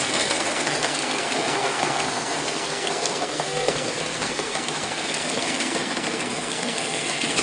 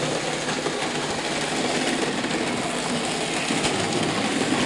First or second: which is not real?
first